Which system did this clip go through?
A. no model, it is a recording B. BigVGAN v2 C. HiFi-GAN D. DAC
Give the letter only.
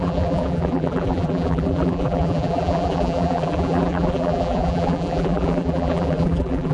B